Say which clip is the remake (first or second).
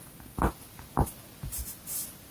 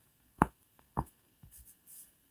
second